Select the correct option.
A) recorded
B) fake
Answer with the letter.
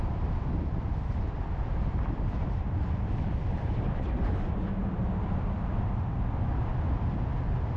B